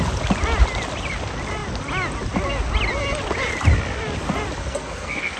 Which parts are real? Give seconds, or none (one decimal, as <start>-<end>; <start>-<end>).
0.0-4.6